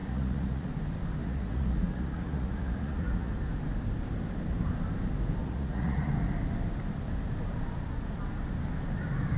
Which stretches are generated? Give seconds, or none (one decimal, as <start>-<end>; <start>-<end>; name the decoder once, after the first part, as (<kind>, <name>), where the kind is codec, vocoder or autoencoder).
0.0-0.7 (vocoder, Vocos); 1.2-3.3; 5.4-6.1